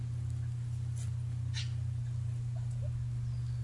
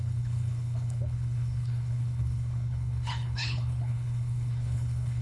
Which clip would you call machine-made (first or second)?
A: second